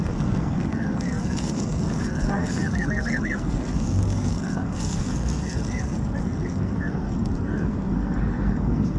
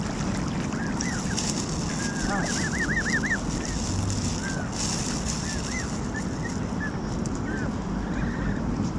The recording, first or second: second